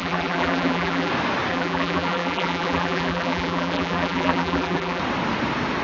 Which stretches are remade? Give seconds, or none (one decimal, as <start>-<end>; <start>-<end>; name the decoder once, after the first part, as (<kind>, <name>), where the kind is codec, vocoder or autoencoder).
0.0-1.1 (vocoder, BigVGAN v2); 1.5-5.0